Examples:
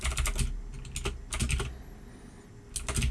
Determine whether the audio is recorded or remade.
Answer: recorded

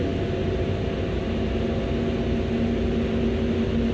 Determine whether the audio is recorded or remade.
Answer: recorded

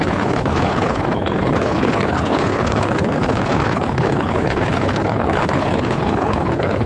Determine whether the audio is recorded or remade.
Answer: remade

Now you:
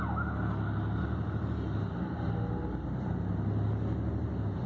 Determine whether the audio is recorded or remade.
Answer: recorded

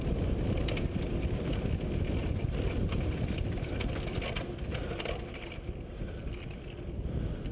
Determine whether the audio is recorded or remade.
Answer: recorded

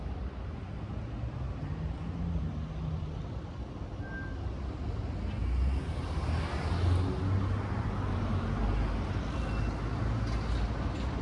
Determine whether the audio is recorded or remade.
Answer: recorded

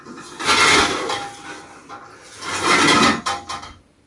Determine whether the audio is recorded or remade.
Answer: recorded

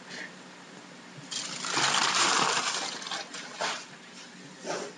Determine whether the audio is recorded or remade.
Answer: recorded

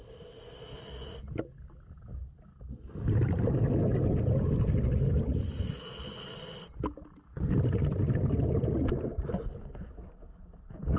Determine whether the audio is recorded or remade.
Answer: recorded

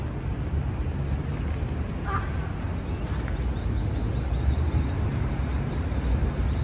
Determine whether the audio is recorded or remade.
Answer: recorded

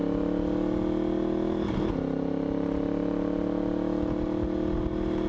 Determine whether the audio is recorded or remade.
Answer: recorded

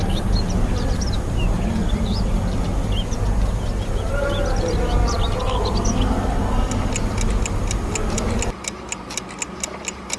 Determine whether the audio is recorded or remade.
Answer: recorded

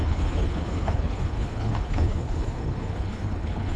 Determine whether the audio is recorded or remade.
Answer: remade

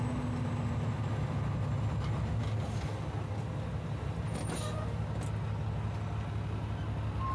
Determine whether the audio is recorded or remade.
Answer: recorded